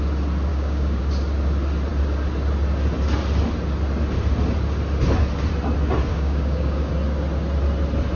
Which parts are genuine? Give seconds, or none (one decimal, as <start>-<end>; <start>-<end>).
0.0-0.5; 1.0-6.1; 6.9-8.2